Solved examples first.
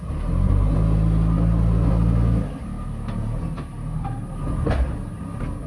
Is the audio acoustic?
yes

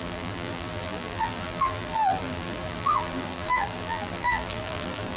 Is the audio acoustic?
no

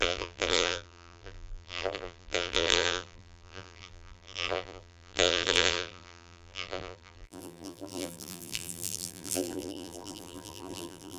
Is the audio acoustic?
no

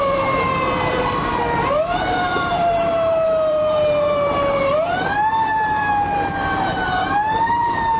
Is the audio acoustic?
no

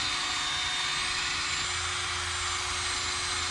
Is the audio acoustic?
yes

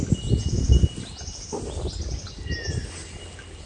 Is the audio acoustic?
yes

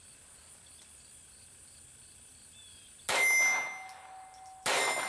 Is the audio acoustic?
yes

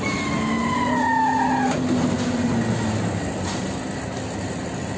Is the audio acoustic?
yes